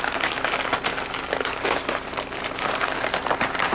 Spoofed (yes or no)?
no